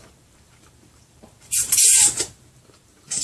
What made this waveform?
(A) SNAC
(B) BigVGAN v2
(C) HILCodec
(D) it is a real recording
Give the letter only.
B